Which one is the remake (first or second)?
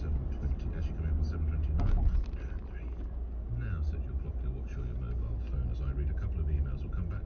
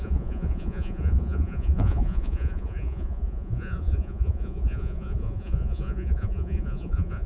second